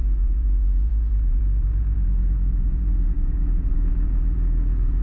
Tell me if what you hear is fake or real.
fake